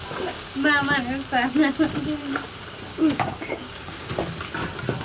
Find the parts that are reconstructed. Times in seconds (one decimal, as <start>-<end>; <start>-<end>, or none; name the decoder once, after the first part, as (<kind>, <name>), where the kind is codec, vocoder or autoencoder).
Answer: 2.9-4.1 (codec, DAC)